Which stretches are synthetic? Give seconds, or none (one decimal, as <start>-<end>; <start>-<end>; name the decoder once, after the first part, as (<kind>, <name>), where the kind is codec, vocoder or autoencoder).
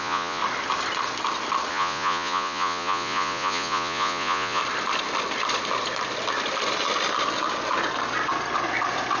0.0-0.4 (vocoder, Vocos); 1.7-4.6